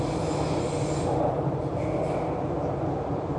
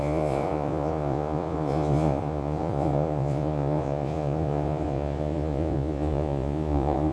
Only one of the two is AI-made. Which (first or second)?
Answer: second